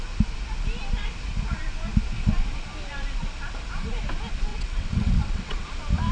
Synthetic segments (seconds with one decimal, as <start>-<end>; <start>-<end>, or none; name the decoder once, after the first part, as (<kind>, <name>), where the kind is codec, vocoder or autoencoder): 4.5-5.6 (vocoder, WaveNeXt)